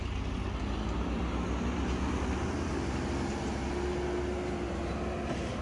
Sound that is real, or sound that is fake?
real